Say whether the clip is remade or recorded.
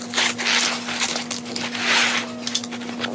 recorded